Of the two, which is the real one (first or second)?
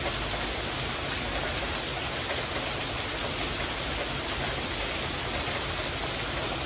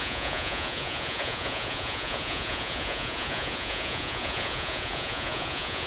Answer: first